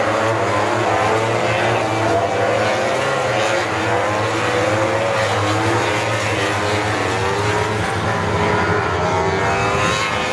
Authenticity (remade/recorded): recorded